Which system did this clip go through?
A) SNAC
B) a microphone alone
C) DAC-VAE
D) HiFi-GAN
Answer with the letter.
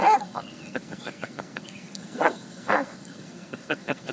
A